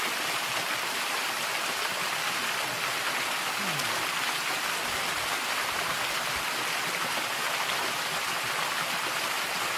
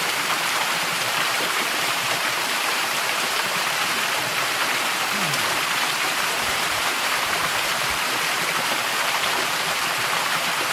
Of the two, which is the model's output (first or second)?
second